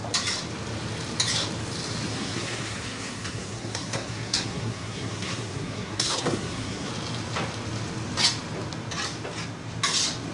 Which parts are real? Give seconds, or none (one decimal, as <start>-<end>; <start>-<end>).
0.0-2.1; 6.9-10.3